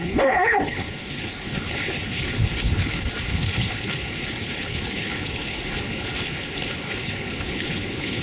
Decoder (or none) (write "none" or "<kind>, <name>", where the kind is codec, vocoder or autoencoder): codec, HILCodec